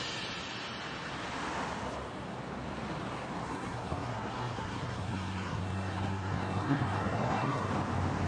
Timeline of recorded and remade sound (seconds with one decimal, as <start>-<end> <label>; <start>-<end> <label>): 0.0-3.4 recorded; 3.4-7.7 remade; 7.7-8.3 recorded